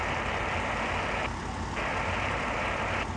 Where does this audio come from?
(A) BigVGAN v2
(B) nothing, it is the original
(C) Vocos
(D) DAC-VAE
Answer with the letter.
B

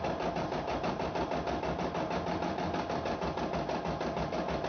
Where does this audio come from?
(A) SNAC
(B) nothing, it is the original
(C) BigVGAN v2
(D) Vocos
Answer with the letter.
B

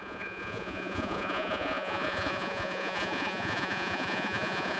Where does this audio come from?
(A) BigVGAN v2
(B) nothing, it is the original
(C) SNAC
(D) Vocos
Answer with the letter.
D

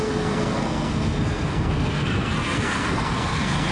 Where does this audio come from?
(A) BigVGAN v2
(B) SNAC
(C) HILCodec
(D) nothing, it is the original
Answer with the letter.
B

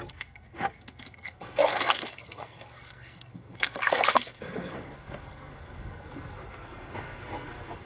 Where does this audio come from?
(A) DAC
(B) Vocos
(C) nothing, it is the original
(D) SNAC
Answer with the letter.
D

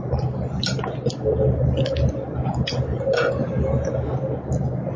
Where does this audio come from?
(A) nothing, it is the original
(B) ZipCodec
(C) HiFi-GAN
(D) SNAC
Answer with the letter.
A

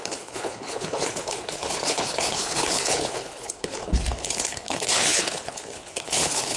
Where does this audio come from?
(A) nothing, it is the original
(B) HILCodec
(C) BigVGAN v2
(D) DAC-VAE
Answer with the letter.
B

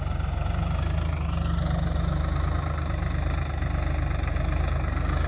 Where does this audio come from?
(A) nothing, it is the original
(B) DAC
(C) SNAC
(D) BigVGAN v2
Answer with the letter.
A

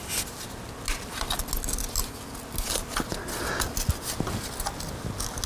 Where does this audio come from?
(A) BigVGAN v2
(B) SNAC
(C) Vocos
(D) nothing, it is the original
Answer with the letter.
D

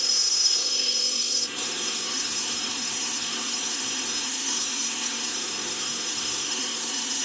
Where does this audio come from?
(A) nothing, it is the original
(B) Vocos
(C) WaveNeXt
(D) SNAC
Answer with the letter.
D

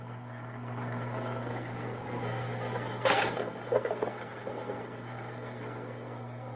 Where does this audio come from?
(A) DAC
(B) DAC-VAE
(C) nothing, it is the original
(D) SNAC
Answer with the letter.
D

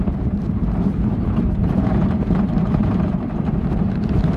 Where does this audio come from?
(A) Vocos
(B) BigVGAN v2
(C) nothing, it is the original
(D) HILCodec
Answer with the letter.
B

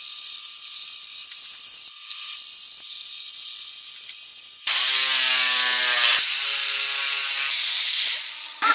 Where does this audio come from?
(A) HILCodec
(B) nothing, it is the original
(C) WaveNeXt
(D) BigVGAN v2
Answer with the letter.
B